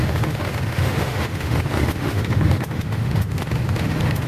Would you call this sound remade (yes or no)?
yes